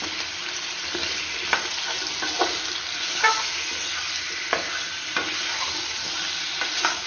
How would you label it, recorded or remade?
recorded